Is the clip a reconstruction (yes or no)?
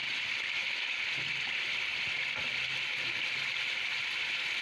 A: no